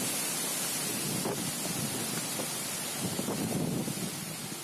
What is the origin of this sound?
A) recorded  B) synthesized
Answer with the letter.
A